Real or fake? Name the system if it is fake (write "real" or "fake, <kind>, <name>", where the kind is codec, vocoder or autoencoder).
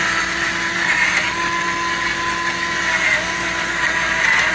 real